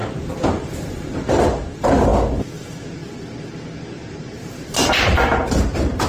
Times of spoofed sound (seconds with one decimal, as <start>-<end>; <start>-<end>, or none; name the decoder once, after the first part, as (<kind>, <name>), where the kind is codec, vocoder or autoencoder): 0.0-2.1 (vocoder, BigVGAN v2); 2.6-3.0; 4.1-6.1